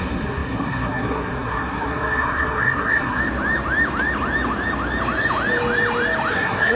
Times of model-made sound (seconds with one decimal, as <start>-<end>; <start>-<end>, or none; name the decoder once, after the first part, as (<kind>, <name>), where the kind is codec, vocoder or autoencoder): 0.0-3.2 (codec, SNAC); 6.3-6.8